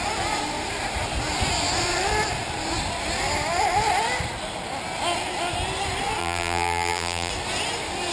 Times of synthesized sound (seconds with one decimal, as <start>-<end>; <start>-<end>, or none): 6.2-7.3